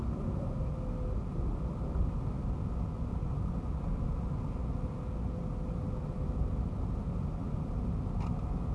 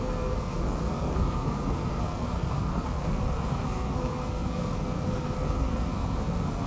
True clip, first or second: first